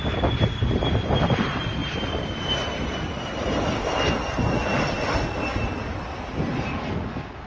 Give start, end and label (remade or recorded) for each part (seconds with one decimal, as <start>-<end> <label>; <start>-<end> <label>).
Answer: 0.0-7.5 recorded